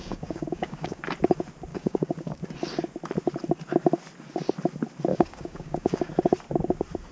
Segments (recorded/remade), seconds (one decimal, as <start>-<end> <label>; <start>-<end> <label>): 0.0-1.0 remade; 1.0-1.7 recorded; 1.7-2.4 remade; 2.4-5.1 recorded; 5.1-6.1 remade; 6.1-7.1 recorded